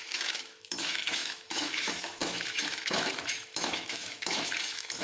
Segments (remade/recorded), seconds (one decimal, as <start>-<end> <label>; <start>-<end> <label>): 0.0-5.0 remade